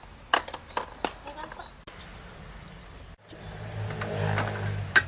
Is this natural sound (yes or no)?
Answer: yes